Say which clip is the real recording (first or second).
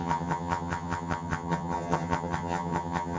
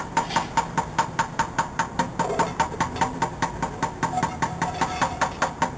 second